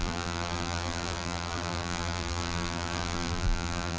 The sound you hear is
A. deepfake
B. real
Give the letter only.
A